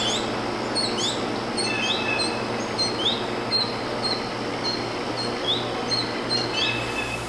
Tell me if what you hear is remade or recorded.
recorded